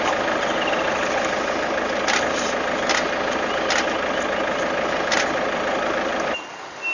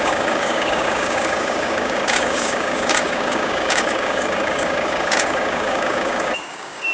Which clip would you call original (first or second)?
first